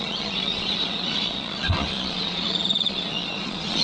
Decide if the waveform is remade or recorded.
remade